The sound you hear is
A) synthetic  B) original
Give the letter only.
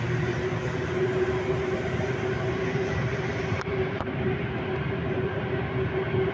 B